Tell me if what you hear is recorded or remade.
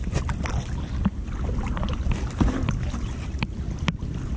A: recorded